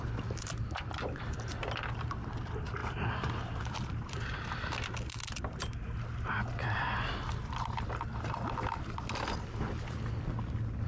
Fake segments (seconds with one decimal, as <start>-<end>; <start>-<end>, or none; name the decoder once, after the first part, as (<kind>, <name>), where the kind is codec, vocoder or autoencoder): 2.8-4.5 (vocoder, BigVGAN v2)